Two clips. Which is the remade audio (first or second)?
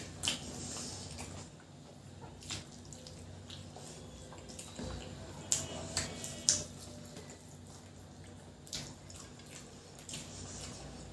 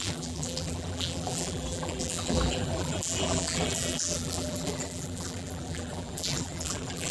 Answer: second